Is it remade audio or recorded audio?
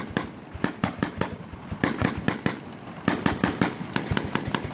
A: recorded